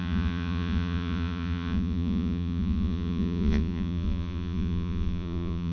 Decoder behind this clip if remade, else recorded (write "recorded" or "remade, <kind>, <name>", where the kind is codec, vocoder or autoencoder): remade, vocoder, Vocos